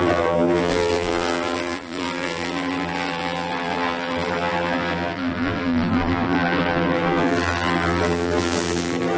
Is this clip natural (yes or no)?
no